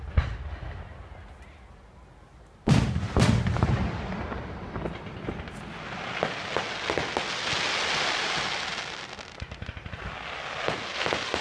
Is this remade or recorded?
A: recorded